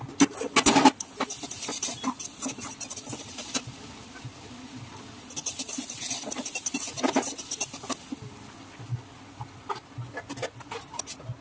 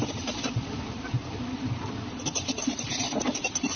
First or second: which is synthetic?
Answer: second